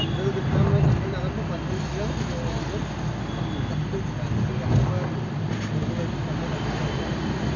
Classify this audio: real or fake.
real